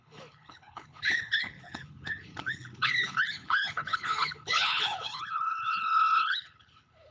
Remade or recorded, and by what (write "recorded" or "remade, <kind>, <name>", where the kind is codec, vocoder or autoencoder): remade, codec, HILCodec